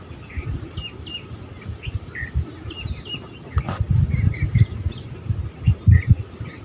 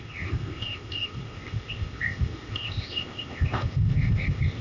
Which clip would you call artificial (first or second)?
second